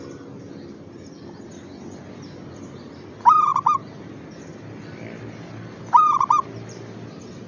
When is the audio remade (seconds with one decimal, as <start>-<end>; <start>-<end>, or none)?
none